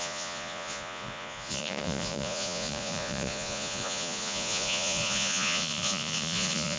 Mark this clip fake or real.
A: fake